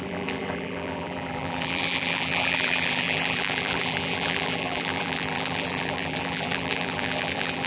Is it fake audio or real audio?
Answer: fake